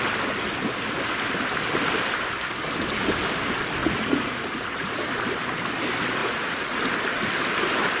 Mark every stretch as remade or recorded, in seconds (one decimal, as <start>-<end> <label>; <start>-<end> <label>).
0.0-3.8 recorded; 3.8-5.0 remade; 5.0-6.2 recorded; 6.2-6.8 remade; 6.8-8.0 recorded